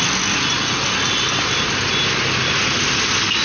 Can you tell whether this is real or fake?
real